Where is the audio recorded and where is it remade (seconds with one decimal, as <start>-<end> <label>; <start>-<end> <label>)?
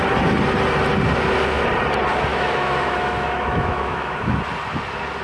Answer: 0.0-2.3 recorded; 2.3-4.4 remade; 4.4-5.2 recorded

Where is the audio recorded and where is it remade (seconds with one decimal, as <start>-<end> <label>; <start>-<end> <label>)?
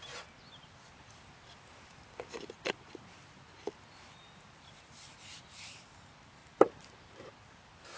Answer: 0.0-6.4 recorded; 6.4-7.3 remade; 7.3-8.0 recorded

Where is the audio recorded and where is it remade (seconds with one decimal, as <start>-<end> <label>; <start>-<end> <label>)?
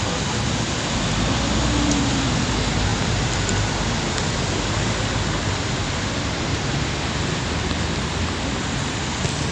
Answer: 0.0-2.9 recorded; 2.9-3.5 remade; 3.5-9.5 recorded